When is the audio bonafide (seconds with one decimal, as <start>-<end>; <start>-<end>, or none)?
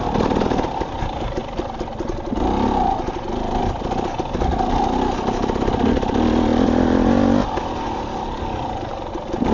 0.0-1.4; 2.2-9.5